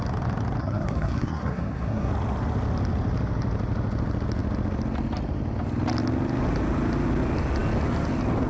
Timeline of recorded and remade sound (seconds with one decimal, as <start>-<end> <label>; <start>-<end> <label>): 0.0-0.6 recorded; 0.6-2.1 remade; 2.1-8.5 recorded